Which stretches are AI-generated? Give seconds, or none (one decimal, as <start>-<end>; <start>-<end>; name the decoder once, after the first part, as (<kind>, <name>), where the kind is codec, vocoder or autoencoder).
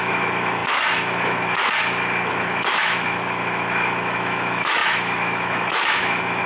0.0-1.6 (autoencoder, DAC-VAE); 2.3-6.5